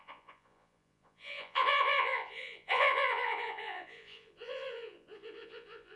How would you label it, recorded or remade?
remade